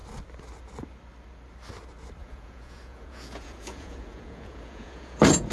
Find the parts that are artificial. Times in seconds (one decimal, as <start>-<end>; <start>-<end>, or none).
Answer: 2.2-5.5